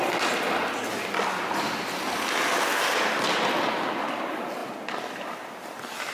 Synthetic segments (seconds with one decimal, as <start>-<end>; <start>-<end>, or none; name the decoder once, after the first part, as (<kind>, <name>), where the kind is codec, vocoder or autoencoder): none